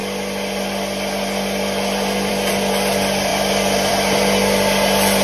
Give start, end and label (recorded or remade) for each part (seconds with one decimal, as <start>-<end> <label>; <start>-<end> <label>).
0.0-5.2 recorded